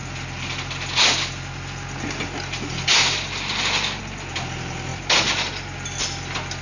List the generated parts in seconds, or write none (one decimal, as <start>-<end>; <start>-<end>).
none